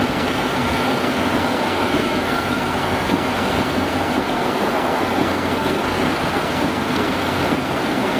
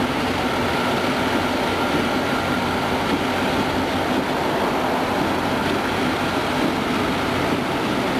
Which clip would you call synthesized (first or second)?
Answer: first